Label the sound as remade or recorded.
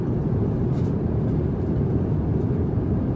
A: remade